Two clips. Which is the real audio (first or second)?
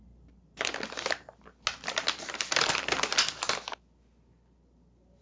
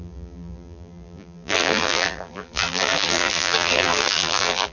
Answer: first